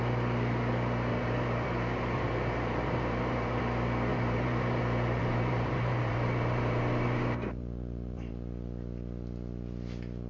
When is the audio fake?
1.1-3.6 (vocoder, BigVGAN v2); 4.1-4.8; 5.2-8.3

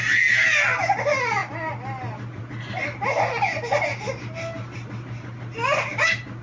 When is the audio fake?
none

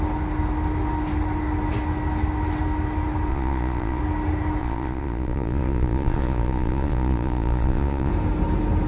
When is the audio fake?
3.3-4.0 (vocoder, Vocos); 4.6-8.1

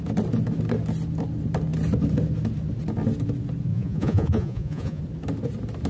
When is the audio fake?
3.7-5.0 (vocoder, Vocos)